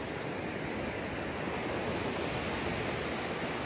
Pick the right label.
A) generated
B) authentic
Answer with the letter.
B